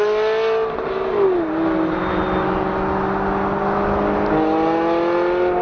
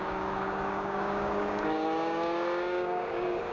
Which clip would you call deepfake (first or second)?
second